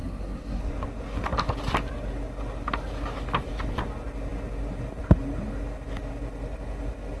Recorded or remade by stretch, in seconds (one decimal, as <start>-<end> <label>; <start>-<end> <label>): 0.0-0.6 remade; 0.6-7.2 recorded